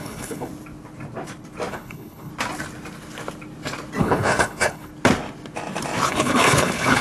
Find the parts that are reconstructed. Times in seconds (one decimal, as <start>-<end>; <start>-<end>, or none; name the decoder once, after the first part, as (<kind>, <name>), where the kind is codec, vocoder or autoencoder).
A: 0.0-0.5 (codec, HILCodec); 1.7-2.3; 4.0-4.9; 6.1-7.0